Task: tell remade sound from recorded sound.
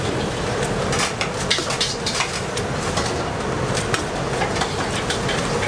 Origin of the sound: recorded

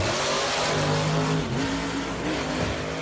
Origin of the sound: recorded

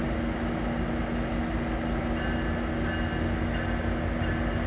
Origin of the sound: recorded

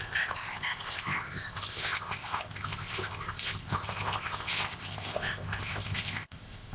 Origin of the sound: remade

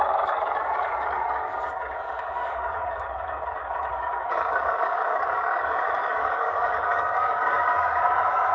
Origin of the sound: remade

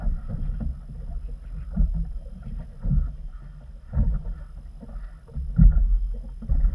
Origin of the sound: recorded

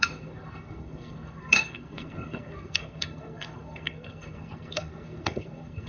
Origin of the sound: remade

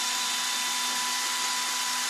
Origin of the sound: recorded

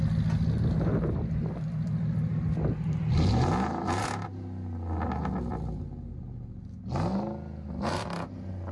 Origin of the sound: recorded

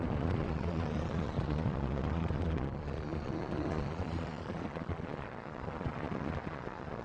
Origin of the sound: remade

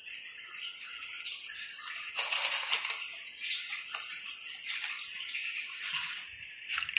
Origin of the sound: recorded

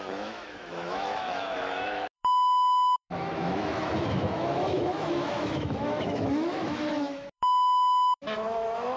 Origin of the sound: remade